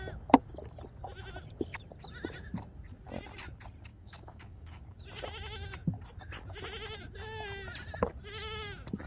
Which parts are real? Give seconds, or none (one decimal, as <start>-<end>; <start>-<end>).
0.0-3.9; 5.0-9.1